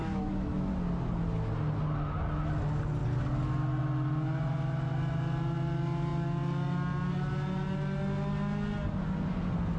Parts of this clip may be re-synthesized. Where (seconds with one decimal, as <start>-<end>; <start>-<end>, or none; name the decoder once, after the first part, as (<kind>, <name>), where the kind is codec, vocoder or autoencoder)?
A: 0.0-0.7 (autoencoder, DAC-VAE)